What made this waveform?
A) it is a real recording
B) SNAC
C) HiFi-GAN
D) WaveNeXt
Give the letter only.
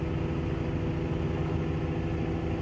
A